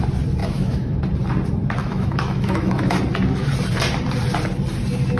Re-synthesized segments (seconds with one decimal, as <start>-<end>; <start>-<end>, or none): 0.4-1.0; 1.8-3.0